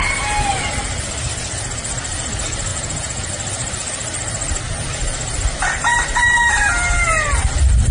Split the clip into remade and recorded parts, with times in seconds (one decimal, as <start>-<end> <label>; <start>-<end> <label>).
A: 0.0-2.7 recorded; 2.7-3.3 remade; 3.3-7.9 recorded